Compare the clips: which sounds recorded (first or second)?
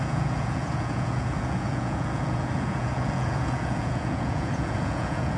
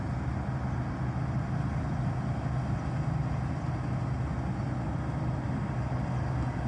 second